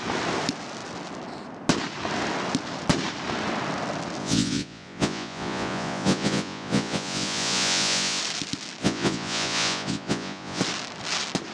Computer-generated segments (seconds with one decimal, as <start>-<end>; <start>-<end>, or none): 4.2-8.2; 8.8-10.6

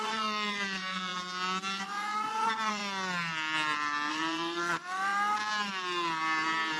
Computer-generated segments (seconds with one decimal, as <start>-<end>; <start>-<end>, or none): 0.0-1.1; 1.8-2.8; 4.1-5.1

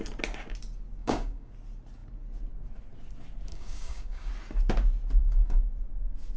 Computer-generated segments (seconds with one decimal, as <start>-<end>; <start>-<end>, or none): 1.0-1.5; 3.5-4.3; 5.2-5.7

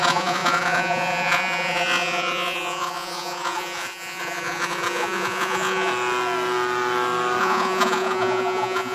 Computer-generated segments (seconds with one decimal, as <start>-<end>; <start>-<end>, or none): 0.0-5.9; 7.4-8.9

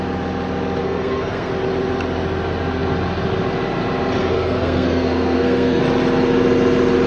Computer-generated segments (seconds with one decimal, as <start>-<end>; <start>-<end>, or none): 0.8-1.5; 4.2-5.8

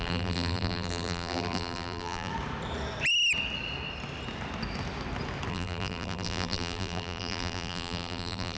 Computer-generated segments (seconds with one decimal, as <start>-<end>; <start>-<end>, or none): 0.0-2.3; 5.5-8.6